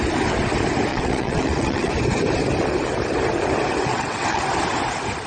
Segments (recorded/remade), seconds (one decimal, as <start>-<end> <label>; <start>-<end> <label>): 0.0-0.9 recorded; 0.9-1.9 remade; 1.9-3.9 recorded; 3.9-4.4 remade; 4.4-5.3 recorded